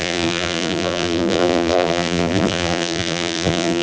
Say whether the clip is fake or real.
fake